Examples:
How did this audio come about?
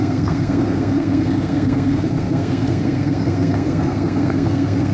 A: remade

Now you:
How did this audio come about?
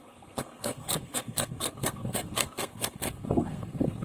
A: remade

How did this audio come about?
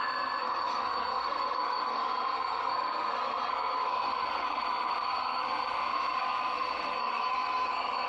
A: remade